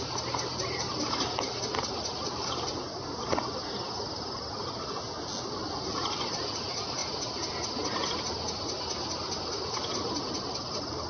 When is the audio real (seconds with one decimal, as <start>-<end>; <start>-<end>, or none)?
3.6-5.4; 7.0-10.2